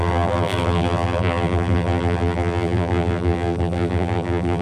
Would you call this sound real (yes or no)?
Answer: no